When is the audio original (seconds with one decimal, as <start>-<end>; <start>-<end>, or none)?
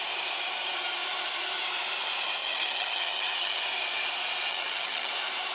0.0-2.4; 3.6-4.5; 5.1-5.5